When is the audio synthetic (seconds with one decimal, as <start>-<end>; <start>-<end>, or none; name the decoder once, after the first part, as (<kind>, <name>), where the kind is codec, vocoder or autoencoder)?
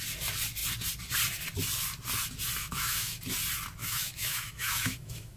2.6-3.2 (autoencoder, DAC-VAE); 3.8-5.4